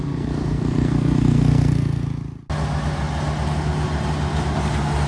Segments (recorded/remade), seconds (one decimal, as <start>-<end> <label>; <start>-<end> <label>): 0.0-2.0 remade; 2.0-5.1 recorded